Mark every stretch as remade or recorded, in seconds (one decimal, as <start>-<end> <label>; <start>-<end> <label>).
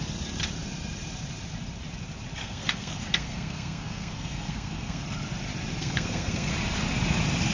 0.0-2.4 recorded; 2.4-5.0 remade; 5.0-5.8 recorded; 5.8-6.5 remade; 6.5-7.5 recorded